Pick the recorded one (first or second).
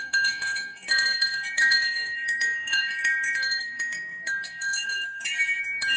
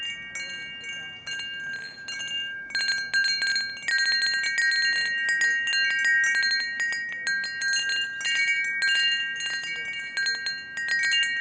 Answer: second